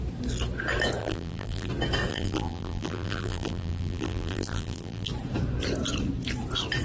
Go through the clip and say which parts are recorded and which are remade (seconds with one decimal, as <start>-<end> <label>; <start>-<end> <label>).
0.0-1.0 recorded; 1.0-1.7 remade; 1.7-2.1 recorded; 2.1-5.1 remade; 5.1-6.8 recorded